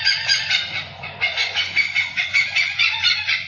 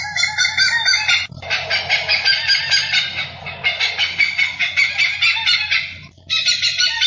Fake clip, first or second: first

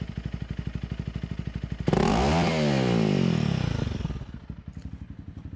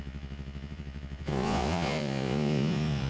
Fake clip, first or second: second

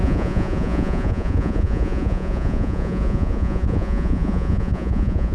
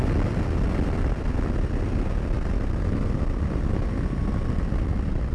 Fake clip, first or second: first